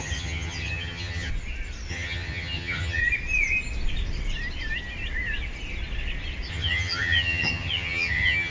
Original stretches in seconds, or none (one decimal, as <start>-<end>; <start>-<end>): 1.3-1.9; 3.0-6.5

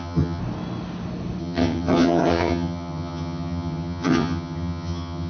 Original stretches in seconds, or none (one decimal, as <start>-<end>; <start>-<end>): 0.4-1.4

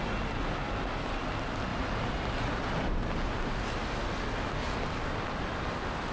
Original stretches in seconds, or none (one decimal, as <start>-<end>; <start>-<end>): 0.0-6.1

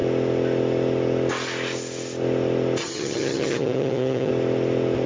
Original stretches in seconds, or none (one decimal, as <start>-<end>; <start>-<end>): 0.0-2.8; 4.3-5.1

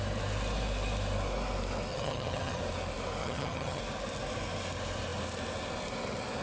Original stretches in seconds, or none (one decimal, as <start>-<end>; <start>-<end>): 0.0-1.9; 2.6-3.2; 3.8-6.4

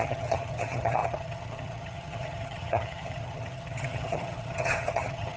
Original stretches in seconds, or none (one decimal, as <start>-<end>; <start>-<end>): none